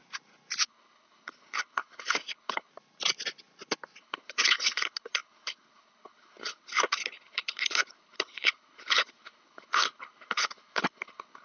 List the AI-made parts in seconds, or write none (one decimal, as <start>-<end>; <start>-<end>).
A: 0.6-2.7; 4.0-11.4